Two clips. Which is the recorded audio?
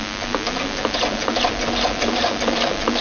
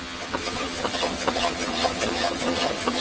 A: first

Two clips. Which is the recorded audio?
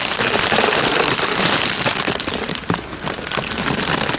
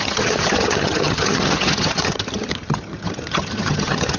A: first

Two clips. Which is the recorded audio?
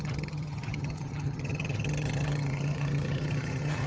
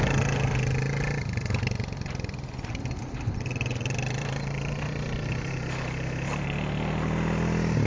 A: second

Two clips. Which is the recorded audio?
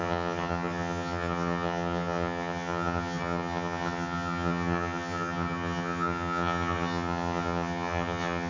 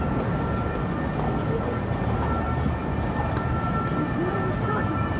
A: second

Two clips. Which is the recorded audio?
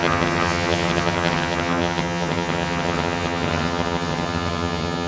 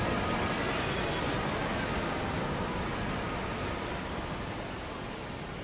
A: second